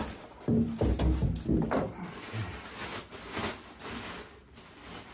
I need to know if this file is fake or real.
real